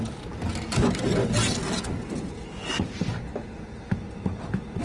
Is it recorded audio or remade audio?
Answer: recorded